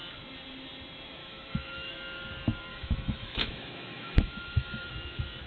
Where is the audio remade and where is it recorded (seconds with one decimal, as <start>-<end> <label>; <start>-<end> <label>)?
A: 0.0-1.2 recorded; 1.2-1.9 remade; 1.9-2.7 recorded; 2.7-4.9 remade; 4.9-5.5 recorded